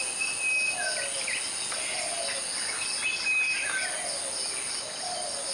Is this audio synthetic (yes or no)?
no